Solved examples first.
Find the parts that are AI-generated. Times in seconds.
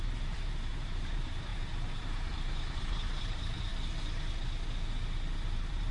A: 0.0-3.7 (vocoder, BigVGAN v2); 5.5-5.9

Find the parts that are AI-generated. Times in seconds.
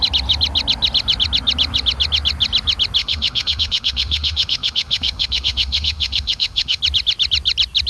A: 3.0-6.8 (autoencoder, DAC-VAE)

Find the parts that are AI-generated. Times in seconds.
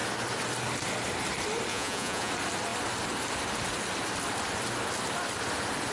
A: 1.7-2.3 (vocoder, Vocos)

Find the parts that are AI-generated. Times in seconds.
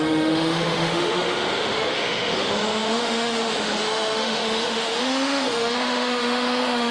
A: 0.0-6.9 (autoencoder, DAC-VAE)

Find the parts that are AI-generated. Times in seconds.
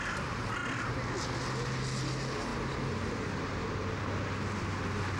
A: none